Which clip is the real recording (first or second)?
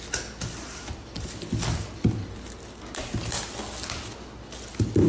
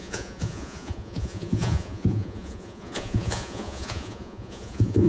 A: first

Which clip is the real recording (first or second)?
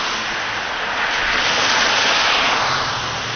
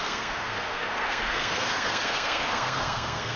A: first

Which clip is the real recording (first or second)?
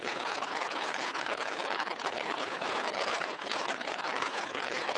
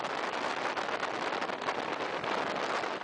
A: second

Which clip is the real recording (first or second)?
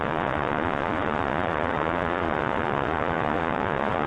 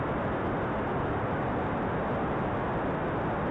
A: second